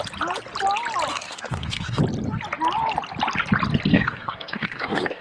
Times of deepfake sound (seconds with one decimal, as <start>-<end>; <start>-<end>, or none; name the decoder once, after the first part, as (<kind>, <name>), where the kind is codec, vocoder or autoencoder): 1.1-2.0 (codec, SNAC); 3.9-5.2